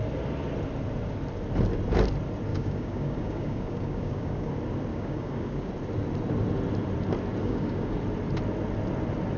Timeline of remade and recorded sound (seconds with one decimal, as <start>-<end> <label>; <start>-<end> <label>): 0.0-2.5 recorded; 2.5-4.5 remade; 4.5-4.9 recorded; 4.9-5.7 remade; 5.7-7.4 recorded; 7.4-8.0 remade; 8.0-9.4 recorded